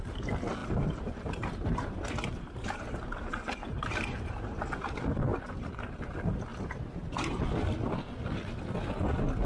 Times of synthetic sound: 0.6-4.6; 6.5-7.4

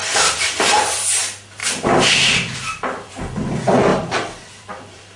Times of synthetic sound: 0.0-1.2; 1.6-3.2; 3.9-5.2

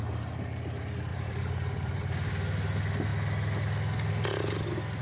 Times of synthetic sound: 1.1-2.3

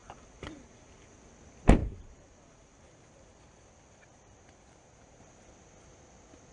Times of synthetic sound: 0.0-1.1; 1.8-5.2

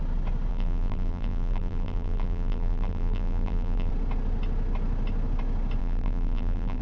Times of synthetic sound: 0.5-3.9; 5.8-6.8

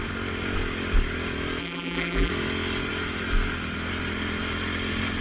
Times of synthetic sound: 1.6-2.3

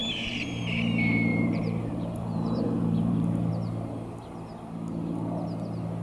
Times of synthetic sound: 0.0-0.6; 1.3-3.5

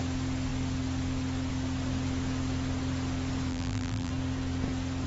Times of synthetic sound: 3.5-4.1